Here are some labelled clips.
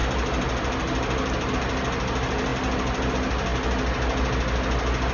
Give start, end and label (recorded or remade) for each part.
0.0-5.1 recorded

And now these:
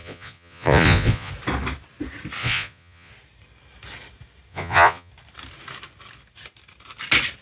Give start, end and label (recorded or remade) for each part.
0.0-1.3 remade; 1.3-2.4 recorded; 2.4-3.1 remade; 3.1-4.5 recorded; 4.5-5.1 remade; 5.1-7.4 recorded

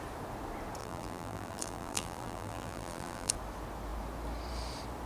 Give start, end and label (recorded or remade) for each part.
0.0-0.8 recorded; 0.8-3.3 remade; 3.3-5.1 recorded

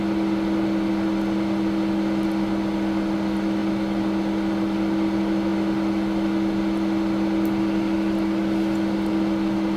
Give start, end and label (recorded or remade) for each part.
0.0-9.8 recorded

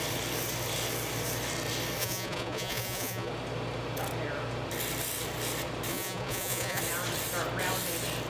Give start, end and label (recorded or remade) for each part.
0.0-2.0 recorded; 2.0-3.3 remade; 3.3-5.9 recorded; 5.9-6.8 remade; 6.8-8.3 recorded

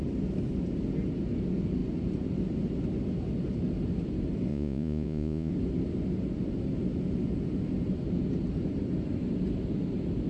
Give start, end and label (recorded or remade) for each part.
0.0-4.5 recorded; 4.5-5.5 remade; 5.5-10.3 recorded

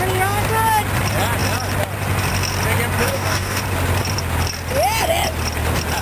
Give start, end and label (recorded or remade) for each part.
0.0-3.0 recorded; 3.0-3.6 remade; 3.6-6.0 recorded

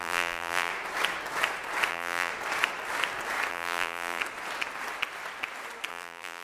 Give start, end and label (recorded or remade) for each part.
0.0-0.7 remade; 0.7-1.9 recorded; 1.9-2.3 remade; 2.3-3.5 recorded; 3.5-4.2 remade; 4.2-5.9 recorded; 5.9-6.4 remade